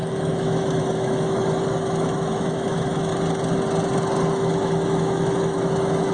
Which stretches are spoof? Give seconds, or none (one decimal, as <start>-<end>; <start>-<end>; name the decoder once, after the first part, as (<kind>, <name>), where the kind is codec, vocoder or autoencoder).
0.0-3.1 (autoencoder, DAC-VAE); 4.3-6.1